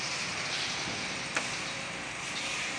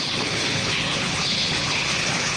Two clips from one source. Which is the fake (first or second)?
second